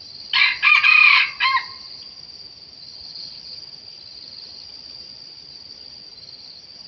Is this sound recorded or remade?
recorded